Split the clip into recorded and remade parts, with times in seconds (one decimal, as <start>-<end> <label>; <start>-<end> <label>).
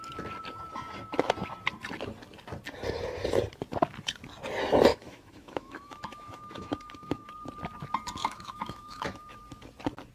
0.0-4.9 recorded; 4.9-7.3 remade; 7.3-8.2 recorded; 8.2-9.4 remade; 9.4-10.1 recorded